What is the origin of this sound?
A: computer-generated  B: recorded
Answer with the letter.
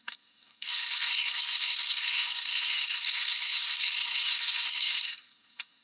A